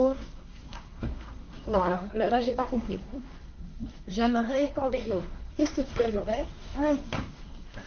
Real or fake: fake